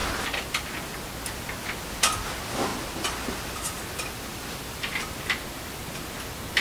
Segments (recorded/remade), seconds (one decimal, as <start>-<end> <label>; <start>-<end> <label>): 0.0-0.9 remade; 0.9-4.3 recorded; 4.3-5.2 remade; 5.2-6.6 recorded